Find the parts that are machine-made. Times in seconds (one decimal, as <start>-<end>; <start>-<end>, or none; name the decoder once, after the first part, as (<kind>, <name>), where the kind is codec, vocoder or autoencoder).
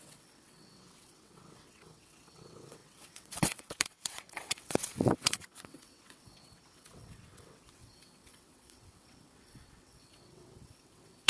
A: 0.0-11.3 (vocoder, WaveNeXt)